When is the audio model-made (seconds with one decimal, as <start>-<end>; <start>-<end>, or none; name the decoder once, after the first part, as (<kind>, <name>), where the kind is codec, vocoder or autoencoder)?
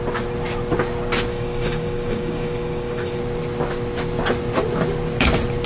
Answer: 1.3-3.2 (codec, DAC)